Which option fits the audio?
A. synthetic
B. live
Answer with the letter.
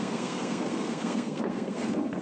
A